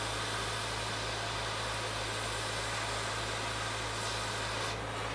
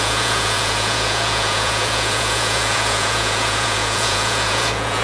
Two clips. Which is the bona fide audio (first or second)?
first